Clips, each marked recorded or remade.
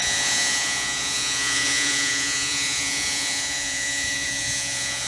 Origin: remade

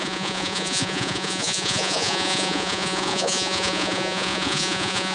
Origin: remade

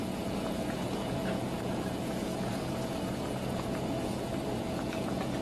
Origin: remade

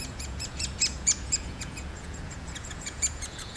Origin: remade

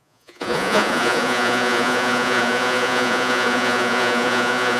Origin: remade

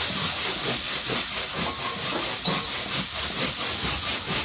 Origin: recorded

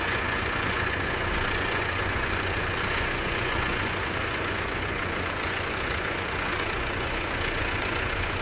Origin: remade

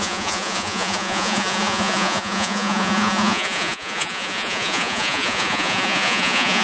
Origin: remade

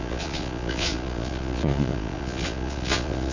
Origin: remade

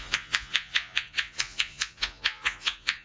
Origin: remade